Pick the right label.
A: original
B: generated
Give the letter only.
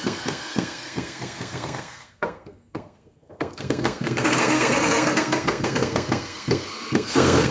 B